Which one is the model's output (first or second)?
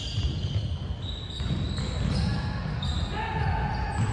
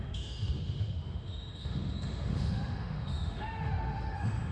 second